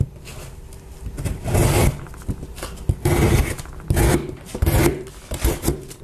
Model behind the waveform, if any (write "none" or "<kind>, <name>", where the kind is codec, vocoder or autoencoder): none